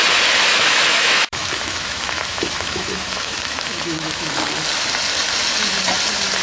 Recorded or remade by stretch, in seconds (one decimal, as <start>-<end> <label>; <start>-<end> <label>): 0.0-0.5 recorded; 0.5-4.3 remade; 4.3-6.4 recorded